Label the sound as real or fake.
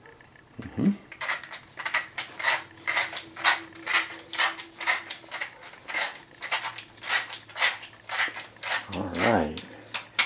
real